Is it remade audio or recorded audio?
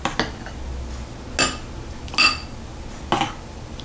recorded